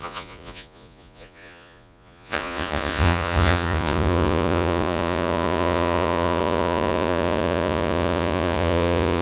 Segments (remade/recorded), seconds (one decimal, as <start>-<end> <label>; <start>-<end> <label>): 0.0-9.2 remade